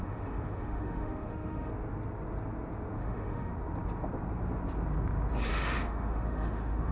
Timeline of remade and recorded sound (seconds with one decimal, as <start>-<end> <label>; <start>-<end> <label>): 0.0-1.7 remade; 1.7-3.0 recorded; 3.0-3.5 remade; 3.5-5.5 recorded; 5.5-6.9 remade